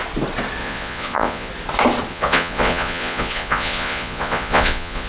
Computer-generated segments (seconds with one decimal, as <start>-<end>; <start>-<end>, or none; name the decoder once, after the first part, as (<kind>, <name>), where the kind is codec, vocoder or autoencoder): 0.6-1.5 (vocoder, Vocos); 2.1-5.1